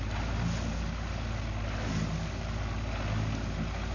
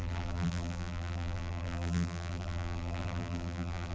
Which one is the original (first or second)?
first